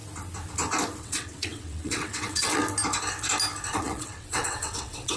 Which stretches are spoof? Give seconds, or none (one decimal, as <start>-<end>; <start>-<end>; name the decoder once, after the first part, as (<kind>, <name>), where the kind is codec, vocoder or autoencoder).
1.0-2.6 (vocoder, WaveNeXt); 3.7-5.2